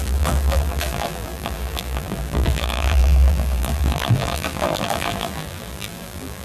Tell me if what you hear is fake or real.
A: fake